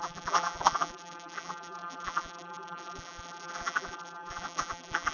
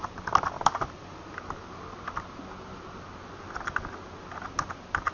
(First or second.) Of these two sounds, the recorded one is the second